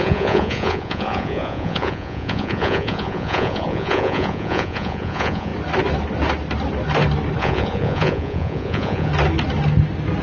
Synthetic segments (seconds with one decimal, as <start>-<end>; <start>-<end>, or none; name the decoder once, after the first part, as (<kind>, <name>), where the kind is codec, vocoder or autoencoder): 0.0-5.5 (vocoder, Vocos); 7.4-9.1